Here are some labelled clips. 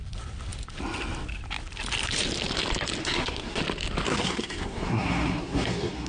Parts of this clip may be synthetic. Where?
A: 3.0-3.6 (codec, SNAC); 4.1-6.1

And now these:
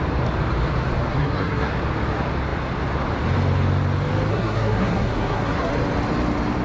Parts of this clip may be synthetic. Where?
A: 1.1-1.7 (codec, SNAC); 4.3-5.7

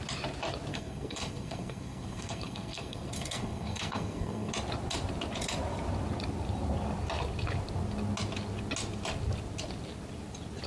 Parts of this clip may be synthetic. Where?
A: 0.7-4.5 (codec, SNAC)

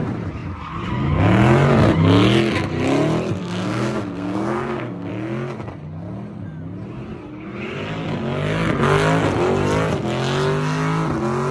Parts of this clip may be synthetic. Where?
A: 3.4-5.1 (codec, SNAC)

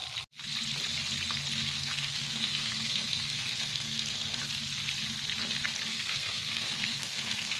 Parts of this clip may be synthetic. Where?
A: 1.6-4.4 (codec, SNAC); 5.9-7.6

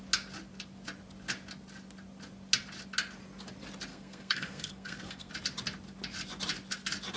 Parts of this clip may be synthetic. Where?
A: 3.9-5.3 (codec, SNAC)